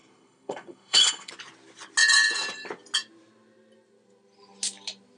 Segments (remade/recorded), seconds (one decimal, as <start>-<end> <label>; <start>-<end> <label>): 0.0-1.3 remade; 1.3-5.2 recorded